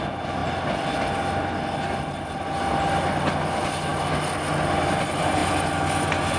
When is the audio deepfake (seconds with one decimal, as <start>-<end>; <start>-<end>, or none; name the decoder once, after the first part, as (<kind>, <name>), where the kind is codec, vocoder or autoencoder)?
0.4-2.2 (vocoder, BigVGAN v2); 5.4-6.4

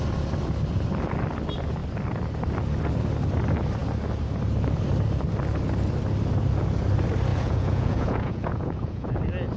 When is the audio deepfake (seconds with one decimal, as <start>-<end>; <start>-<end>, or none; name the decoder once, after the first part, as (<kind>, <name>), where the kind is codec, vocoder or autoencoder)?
7.3-9.1 (vocoder, Vocos)

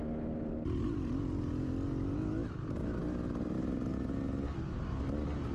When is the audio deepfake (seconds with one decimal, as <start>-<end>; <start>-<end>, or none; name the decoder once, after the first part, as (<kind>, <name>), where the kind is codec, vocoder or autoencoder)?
none

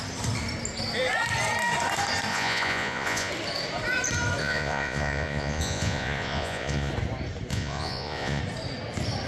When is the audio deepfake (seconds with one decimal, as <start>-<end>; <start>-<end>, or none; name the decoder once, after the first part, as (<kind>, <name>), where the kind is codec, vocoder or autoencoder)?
2.3-3.3 (vocoder, Vocos); 4.4-6.9; 7.5-8.4

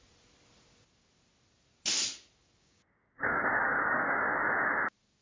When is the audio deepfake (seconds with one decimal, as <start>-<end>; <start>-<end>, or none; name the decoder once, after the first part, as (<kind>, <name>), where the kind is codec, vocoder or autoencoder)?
2.6-4.2 (codec, DAC)

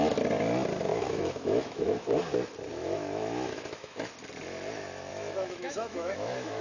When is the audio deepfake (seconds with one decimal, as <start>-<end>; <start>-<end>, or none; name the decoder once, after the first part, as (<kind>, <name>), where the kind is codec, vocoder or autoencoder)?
0.9-2.2 (autoencoder, DAC-VAE); 2.7-4.1; 5.1-6.6

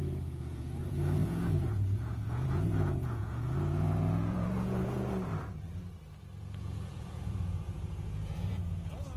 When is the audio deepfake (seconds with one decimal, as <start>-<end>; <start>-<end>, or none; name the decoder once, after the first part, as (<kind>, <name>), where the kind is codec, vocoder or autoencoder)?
0.0-5.3 (vocoder, Vocos); 6.4-9.2

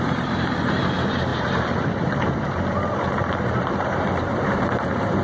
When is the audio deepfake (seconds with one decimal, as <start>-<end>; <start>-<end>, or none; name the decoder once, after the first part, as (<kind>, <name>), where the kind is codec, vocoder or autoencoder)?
0.0-5.2 (vocoder, BigVGAN v2)